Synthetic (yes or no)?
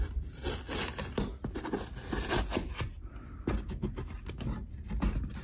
no